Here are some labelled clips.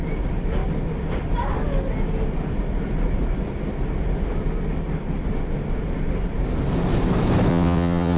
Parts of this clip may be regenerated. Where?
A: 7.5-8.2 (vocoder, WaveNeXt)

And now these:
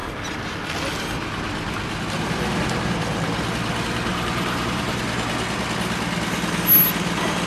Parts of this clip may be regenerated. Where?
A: 4.1-5.0 (vocoder, BigVGAN v2)

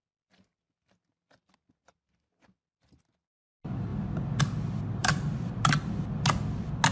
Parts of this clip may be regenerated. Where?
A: 5.0-5.6 (vocoder, BigVGAN v2)